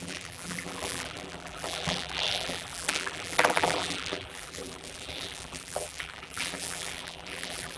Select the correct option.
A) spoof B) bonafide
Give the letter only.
A